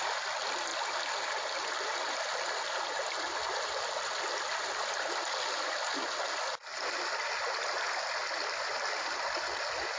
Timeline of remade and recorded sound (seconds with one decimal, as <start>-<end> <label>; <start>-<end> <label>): 0.0-10.0 recorded